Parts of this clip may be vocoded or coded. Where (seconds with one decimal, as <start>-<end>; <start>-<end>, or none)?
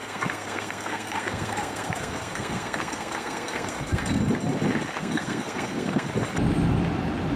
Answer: 0.0-4.2; 5.0-6.1